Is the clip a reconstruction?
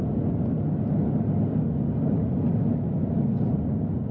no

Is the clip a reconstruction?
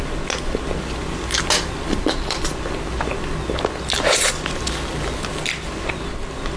no